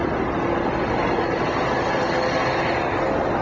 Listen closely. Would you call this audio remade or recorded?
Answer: recorded